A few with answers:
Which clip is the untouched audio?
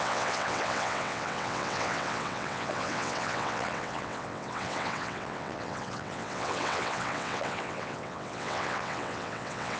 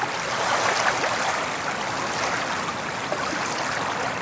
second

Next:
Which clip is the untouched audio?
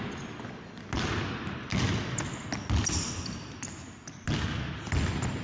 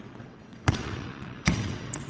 first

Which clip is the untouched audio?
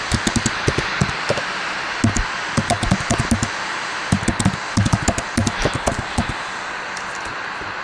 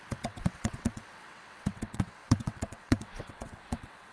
first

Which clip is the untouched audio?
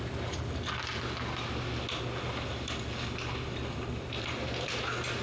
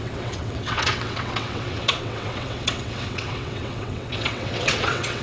first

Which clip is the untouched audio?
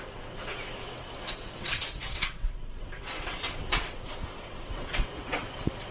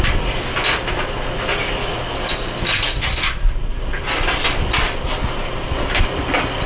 second